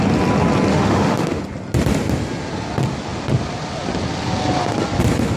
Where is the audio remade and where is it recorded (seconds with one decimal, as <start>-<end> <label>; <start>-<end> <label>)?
0.0-0.7 recorded; 0.7-1.4 remade; 1.4-5.4 recorded